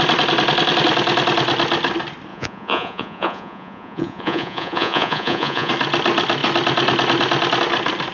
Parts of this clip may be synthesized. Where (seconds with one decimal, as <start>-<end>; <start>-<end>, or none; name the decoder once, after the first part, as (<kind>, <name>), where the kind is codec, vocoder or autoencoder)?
2.3-5.7 (vocoder, Vocos)